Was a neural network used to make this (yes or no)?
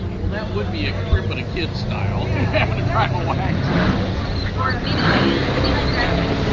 no